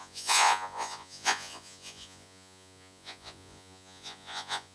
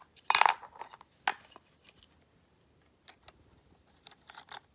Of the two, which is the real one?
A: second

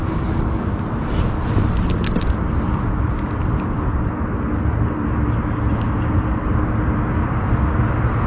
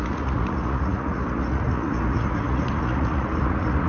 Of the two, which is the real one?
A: first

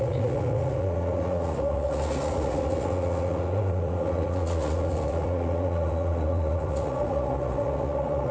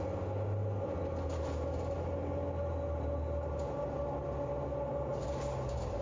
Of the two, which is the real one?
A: second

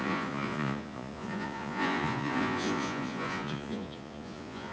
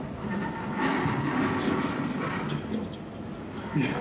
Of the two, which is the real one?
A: second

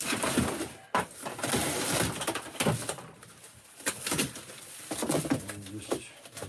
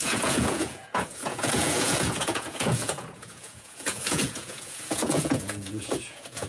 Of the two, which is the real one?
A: first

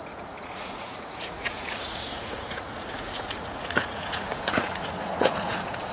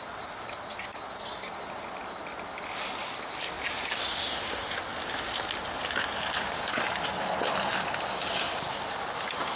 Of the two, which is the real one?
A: second